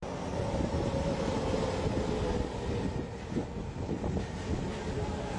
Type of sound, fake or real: real